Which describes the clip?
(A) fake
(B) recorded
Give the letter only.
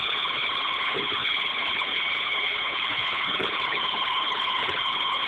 A